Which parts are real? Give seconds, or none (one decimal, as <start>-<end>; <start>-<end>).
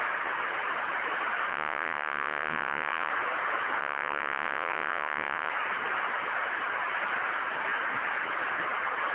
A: 0.0-1.5; 3.1-3.8; 5.5-9.1